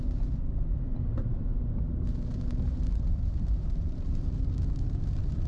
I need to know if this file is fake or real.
fake